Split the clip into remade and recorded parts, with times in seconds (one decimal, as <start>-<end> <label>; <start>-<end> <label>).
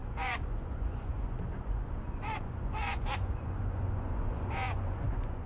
0.0-5.5 remade